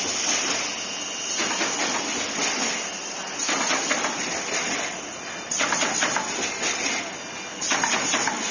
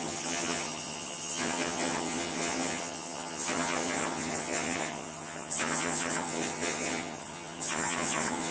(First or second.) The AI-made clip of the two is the second